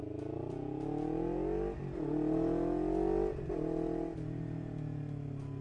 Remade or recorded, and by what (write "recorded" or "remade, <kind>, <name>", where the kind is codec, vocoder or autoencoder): recorded